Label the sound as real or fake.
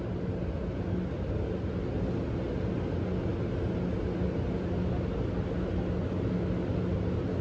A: real